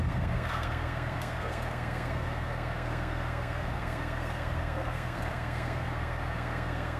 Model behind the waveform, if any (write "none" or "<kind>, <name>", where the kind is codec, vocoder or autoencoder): codec, SNAC